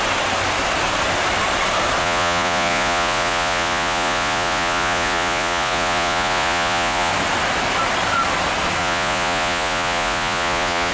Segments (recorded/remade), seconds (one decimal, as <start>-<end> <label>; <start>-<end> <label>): 0.0-2.0 recorded; 2.0-7.1 remade; 7.1-8.8 recorded; 8.8-10.9 remade